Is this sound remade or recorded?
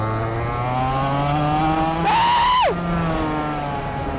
recorded